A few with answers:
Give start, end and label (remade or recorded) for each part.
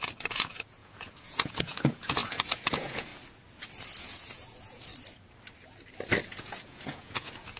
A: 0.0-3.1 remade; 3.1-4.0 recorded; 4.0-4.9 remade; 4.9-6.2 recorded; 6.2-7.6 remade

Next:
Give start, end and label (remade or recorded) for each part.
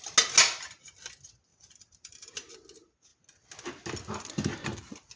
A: 0.0-1.5 recorded; 1.5-2.5 remade; 2.5-5.2 recorded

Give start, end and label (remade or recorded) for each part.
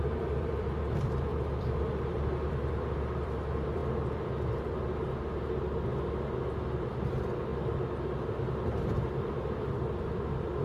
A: 0.0-3.8 remade; 3.8-6.6 recorded; 6.6-7.5 remade; 7.5-9.2 recorded; 9.2-10.6 remade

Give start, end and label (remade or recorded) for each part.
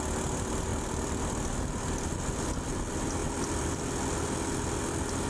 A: 0.0-0.7 recorded; 0.7-2.2 remade; 2.2-3.2 recorded; 3.2-3.9 remade; 3.9-5.3 recorded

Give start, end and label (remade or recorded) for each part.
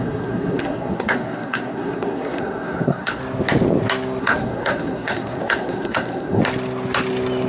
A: 0.0-3.2 remade; 3.2-4.2 recorded; 4.2-6.4 remade; 6.4-7.5 recorded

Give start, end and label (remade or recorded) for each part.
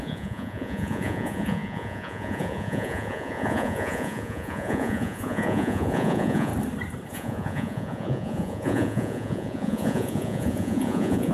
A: 0.0-6.5 remade; 6.5-7.1 recorded; 7.1-11.3 remade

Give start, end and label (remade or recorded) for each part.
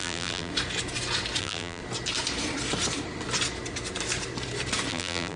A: 0.0-0.5 remade; 0.5-1.4 recorded; 1.4-1.8 remade; 1.8-4.9 recorded; 4.9-5.4 remade